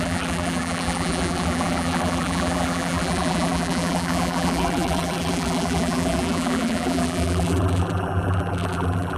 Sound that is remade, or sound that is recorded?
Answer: remade